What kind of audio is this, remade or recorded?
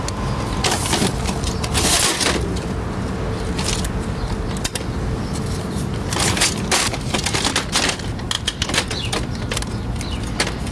recorded